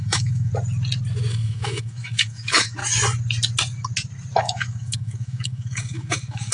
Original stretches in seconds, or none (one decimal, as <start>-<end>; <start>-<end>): 0.5-1.3; 2.8-4.4